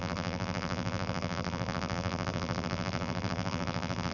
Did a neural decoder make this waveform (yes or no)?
yes